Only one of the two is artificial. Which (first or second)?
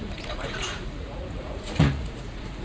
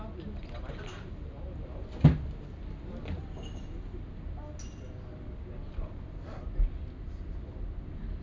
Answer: first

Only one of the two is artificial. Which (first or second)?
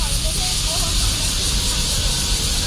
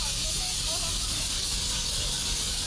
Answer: second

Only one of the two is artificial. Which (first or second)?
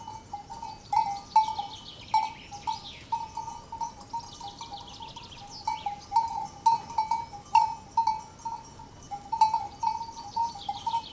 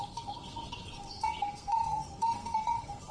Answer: second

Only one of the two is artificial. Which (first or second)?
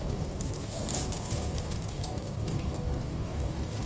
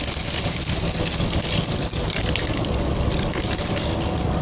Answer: first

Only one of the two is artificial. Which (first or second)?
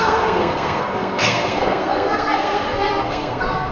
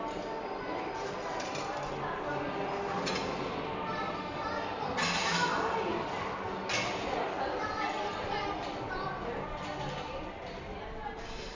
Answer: first